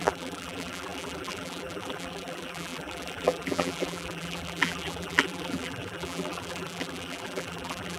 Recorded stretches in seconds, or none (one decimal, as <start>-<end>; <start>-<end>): none